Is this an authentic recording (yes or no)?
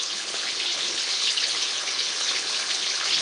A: no